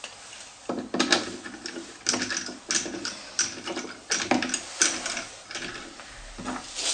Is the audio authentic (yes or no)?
yes